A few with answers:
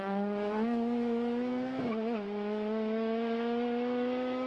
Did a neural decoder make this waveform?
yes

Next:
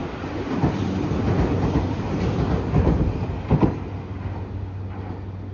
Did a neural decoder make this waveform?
no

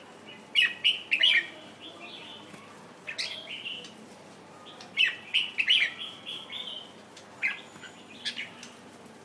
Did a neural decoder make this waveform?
yes